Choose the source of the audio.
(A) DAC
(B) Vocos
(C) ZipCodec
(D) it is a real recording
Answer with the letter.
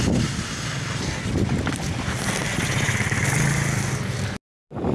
D